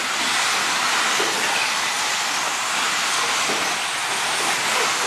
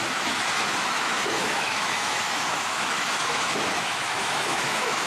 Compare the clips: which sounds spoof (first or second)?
second